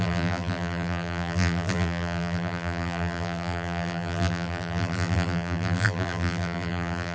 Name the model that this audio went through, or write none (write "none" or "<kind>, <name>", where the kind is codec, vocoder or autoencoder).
vocoder, BigVGAN v2